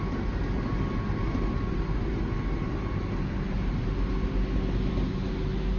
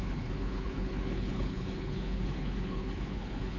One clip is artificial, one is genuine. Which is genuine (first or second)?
first